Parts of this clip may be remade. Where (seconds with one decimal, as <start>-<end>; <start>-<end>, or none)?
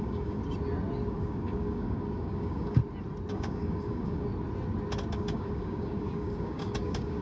0.0-0.4; 1.1-2.8; 3.3-4.3; 5.1-7.2